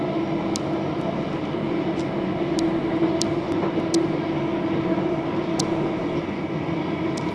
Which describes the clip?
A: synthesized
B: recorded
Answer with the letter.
B